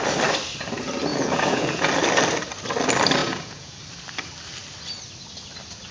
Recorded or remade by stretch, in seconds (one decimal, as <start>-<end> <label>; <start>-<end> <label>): 0.0-1.1 recorded; 1.1-1.9 remade; 1.9-3.2 recorded; 3.2-3.8 remade; 3.8-5.9 recorded